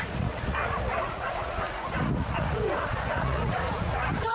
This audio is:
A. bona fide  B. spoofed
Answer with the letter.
B